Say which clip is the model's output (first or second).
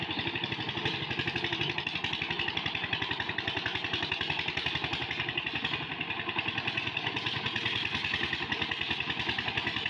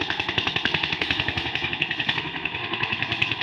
second